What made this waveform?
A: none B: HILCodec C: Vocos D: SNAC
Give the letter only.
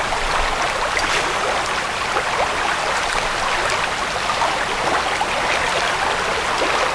A